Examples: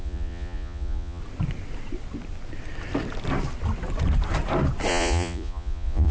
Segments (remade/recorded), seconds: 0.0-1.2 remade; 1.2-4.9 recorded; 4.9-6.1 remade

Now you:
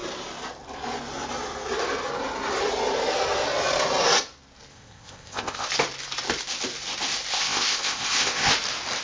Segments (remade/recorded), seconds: 0.0-4.7 recorded; 4.7-5.7 remade; 5.7-7.3 recorded; 7.3-8.5 remade; 8.5-9.0 recorded